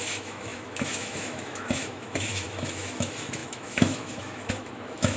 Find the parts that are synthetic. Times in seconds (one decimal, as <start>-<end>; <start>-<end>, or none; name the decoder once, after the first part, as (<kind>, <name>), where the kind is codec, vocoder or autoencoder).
0.0-5.2 (autoencoder, DAC-VAE)